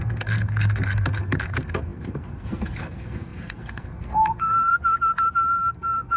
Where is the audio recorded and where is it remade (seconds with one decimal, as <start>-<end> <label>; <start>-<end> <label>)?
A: 0.0-4.7 remade; 4.7-5.7 recorded; 5.7-6.2 remade